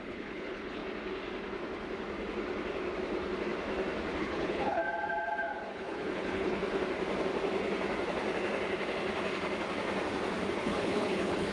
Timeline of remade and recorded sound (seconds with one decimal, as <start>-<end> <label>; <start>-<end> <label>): 0.0-0.8 remade; 0.8-4.2 recorded; 4.2-4.8 remade; 4.8-5.7 recorded; 5.7-6.6 remade; 6.6-10.5 recorded; 10.5-11.5 remade